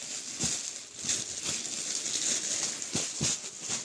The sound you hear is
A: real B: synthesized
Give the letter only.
A